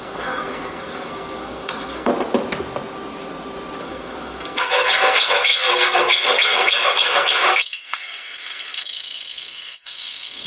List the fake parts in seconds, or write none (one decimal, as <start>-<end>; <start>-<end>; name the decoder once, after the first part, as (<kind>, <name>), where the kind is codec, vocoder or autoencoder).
0.0-2.1 (codec, SNAC); 3.8-10.5